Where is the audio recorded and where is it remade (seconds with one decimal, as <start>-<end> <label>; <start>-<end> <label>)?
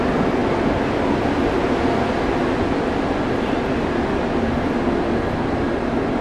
0.0-6.2 recorded